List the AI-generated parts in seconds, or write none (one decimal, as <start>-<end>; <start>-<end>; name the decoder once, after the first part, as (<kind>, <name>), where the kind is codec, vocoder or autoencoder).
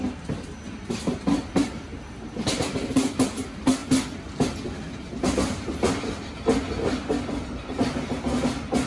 none